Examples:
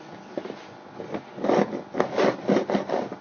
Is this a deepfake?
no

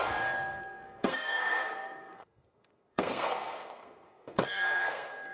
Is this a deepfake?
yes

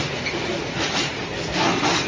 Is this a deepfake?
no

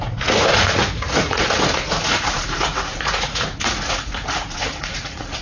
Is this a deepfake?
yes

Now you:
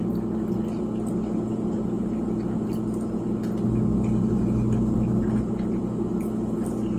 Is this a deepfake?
no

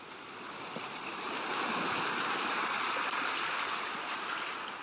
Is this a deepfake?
no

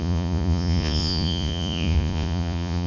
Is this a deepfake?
yes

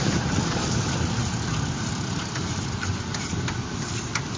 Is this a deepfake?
yes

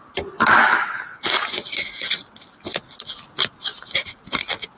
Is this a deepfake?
no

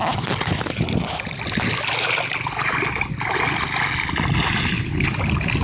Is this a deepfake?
no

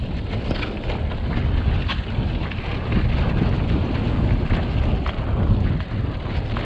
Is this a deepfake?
no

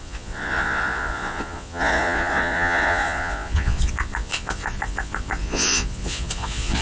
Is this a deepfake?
yes